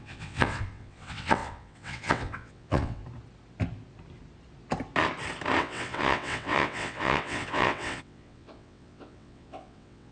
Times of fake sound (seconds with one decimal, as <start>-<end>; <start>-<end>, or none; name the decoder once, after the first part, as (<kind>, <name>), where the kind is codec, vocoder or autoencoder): 0.0-3.0 (vocoder, WaveNeXt); 5.6-10.1